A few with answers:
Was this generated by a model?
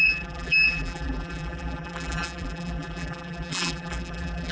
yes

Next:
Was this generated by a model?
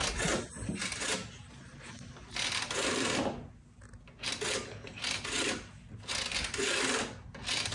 no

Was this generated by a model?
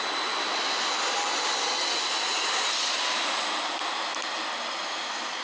no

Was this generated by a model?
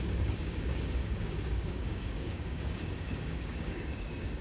yes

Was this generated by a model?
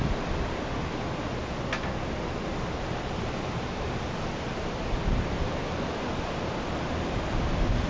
no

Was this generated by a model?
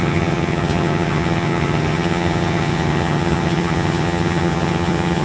yes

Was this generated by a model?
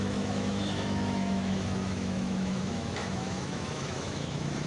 yes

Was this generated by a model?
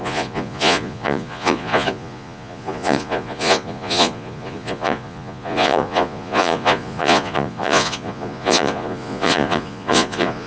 yes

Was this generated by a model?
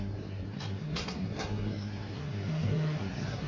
yes